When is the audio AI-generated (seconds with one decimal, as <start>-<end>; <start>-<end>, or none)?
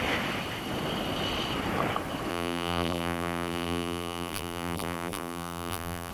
2.3-6.1